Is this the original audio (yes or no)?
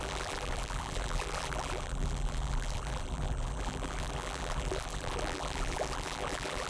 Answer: no